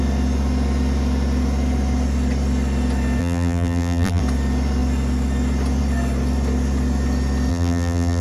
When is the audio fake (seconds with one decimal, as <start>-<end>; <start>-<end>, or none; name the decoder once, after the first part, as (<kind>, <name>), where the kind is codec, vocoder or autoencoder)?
3.2-4.2 (vocoder, BigVGAN v2); 7.5-8.2